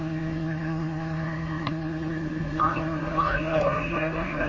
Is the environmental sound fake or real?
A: fake